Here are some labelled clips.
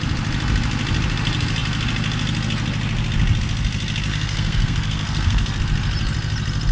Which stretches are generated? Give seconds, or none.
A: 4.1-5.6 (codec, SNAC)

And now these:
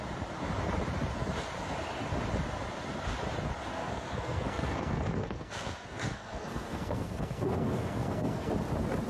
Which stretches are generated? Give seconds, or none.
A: 3.7-8.5 (codec, SNAC)

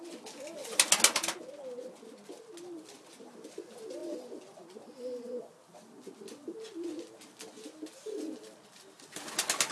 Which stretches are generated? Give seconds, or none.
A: none

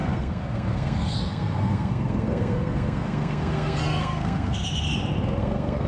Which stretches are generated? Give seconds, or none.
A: 0.0-4.6 (codec, SNAC); 5.4-5.9

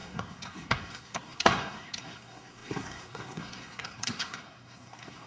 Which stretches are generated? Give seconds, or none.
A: 0.0-5.3 (codec, SNAC)

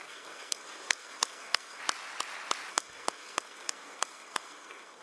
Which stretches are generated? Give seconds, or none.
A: 0.0-1.8 (codec, SNAC); 2.7-5.0